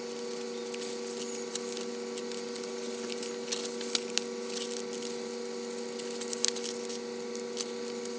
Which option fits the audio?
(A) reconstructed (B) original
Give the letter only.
B